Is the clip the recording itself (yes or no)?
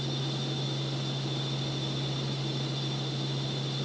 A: yes